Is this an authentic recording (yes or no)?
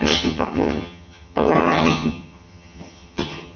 no